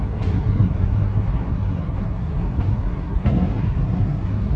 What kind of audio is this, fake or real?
fake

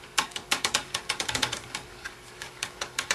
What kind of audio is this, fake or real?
fake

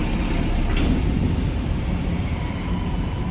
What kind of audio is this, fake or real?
real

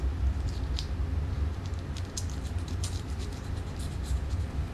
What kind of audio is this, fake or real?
fake